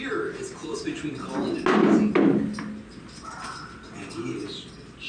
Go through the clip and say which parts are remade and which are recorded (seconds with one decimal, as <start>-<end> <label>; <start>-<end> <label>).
0.0-5.1 recorded